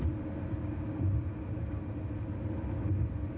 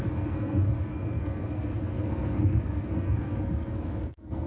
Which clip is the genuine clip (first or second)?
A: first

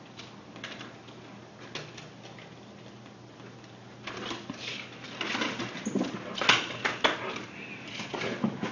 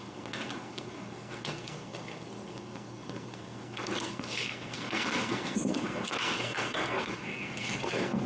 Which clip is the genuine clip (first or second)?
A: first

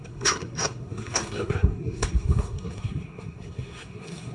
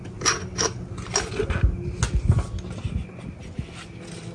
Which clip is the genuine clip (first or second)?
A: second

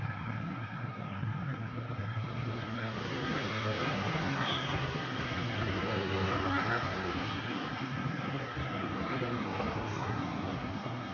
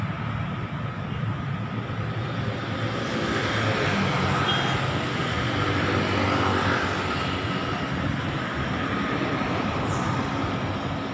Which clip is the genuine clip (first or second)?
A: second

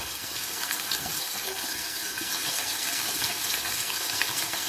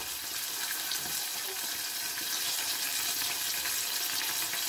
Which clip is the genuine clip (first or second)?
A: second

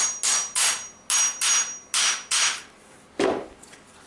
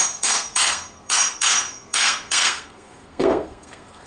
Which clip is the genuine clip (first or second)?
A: first